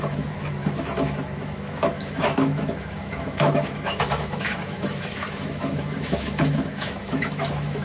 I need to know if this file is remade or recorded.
remade